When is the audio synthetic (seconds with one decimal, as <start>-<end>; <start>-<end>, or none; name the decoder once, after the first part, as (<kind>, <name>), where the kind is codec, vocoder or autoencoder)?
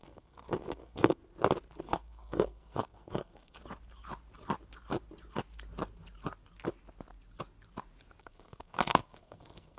0.0-1.2 (codec, SNAC); 1.8-3.6; 8.2-9.8